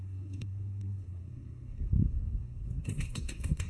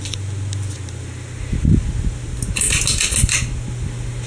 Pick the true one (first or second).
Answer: second